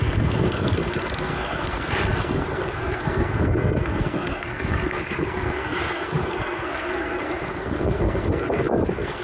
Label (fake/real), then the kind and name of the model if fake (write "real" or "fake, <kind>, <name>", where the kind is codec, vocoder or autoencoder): fake, codec, SNAC